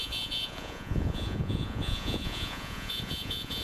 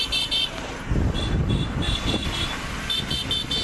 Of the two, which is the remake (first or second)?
first